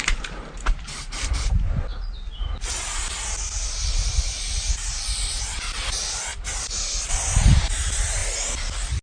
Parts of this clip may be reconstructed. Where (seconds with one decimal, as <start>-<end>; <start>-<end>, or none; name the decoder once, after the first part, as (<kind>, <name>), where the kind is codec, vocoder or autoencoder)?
0.0-1.9 (vocoder, BigVGAN v2); 4.7-6.3; 7.0-8.2